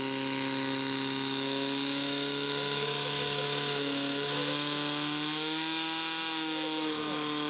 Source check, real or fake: fake